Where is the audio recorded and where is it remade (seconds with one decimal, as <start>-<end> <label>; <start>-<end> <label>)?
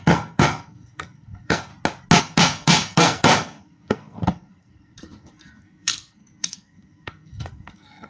0.0-1.7 remade; 1.7-2.2 recorded; 2.2-8.1 remade